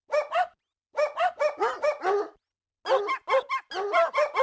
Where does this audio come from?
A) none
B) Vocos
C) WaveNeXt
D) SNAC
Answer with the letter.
A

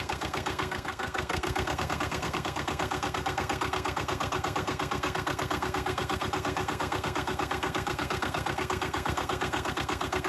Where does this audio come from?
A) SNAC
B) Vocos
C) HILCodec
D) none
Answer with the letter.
A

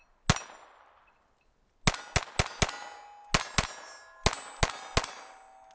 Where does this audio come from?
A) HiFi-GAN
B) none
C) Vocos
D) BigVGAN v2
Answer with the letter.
B